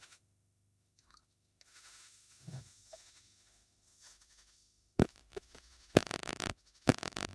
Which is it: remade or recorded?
remade